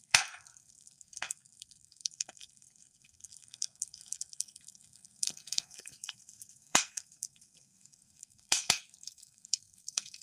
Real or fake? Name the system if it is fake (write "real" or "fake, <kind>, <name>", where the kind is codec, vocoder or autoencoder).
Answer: fake, codec, SNAC